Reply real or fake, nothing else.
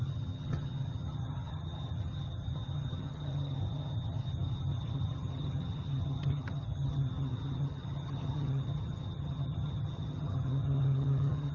fake